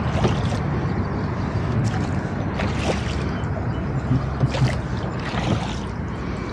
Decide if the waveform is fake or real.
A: real